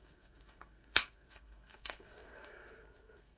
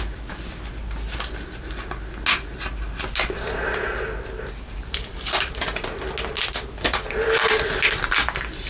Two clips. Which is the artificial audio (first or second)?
first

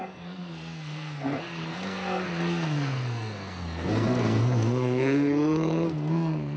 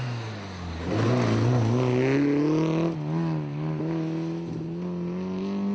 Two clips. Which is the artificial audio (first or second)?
first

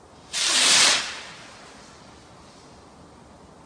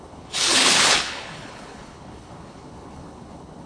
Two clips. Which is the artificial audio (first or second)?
second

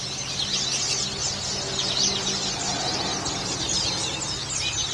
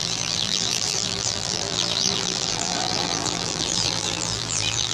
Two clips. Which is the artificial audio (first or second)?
second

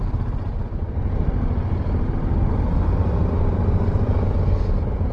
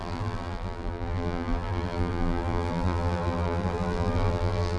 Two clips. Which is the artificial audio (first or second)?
second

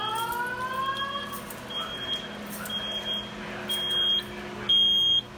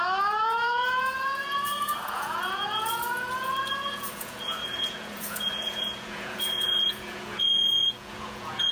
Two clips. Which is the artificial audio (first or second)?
second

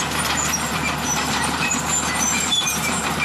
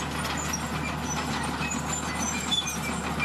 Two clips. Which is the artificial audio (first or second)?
first